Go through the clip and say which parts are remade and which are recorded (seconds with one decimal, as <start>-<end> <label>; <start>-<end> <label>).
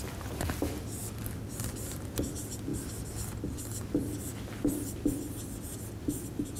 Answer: 0.0-6.6 recorded